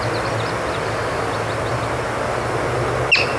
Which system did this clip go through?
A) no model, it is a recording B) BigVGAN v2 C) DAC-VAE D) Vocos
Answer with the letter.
A